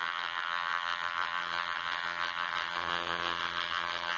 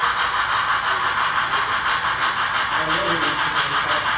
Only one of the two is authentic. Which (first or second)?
second